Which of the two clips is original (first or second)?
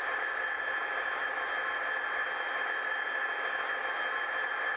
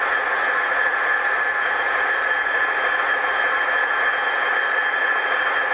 first